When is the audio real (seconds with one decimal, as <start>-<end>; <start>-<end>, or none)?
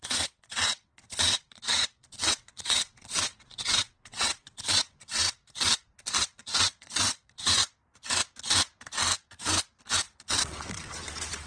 5.4-6.2; 7.6-10.0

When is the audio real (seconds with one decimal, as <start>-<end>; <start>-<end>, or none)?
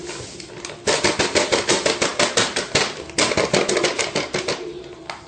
0.0-5.3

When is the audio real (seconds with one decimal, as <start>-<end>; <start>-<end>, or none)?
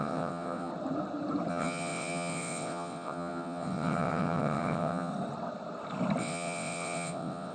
0.7-1.5; 5.1-6.2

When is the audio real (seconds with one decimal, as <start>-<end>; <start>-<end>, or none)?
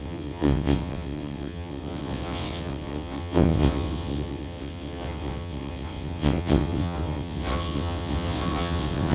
none